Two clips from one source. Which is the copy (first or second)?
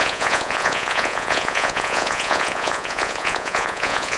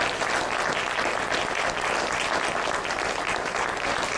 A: first